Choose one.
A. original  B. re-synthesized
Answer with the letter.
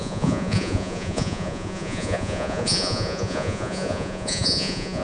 B